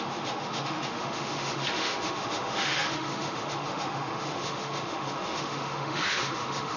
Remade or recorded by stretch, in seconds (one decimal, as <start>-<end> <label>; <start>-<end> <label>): 0.0-6.8 remade